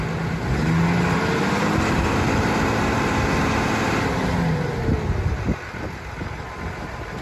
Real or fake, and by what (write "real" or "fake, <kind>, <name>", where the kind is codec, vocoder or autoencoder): real